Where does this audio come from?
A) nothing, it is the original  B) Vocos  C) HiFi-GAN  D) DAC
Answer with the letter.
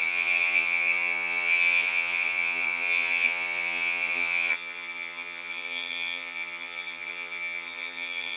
C